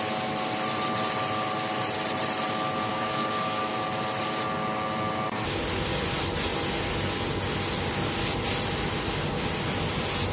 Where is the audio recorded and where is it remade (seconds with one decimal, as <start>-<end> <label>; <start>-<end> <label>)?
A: 0.0-2.9 recorded; 2.9-3.7 remade; 3.7-10.3 recorded